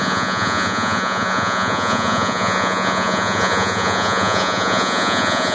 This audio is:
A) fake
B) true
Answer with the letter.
A